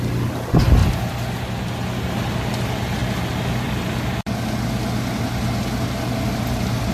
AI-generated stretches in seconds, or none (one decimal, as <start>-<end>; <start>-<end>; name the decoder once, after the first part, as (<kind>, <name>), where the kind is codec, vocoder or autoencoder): none